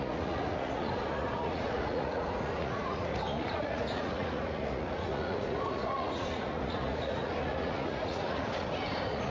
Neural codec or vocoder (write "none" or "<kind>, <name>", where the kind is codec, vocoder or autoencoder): vocoder, Vocos